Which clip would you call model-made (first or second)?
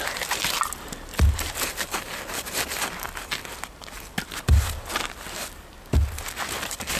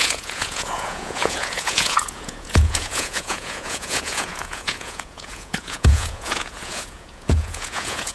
second